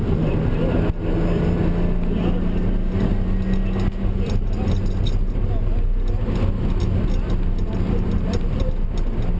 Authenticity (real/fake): real